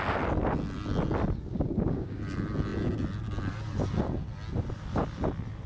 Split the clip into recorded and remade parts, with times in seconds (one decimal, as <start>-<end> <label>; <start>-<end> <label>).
0.0-1.5 recorded; 1.5-2.2 remade; 2.2-5.7 recorded